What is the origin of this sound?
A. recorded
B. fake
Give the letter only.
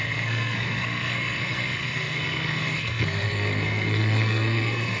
B